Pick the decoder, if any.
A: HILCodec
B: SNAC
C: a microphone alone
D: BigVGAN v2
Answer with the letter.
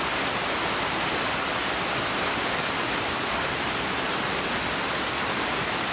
C